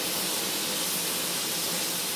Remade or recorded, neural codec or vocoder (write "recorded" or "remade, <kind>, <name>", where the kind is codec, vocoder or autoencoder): recorded